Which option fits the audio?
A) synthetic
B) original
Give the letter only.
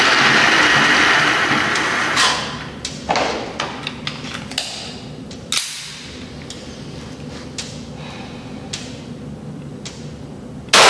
B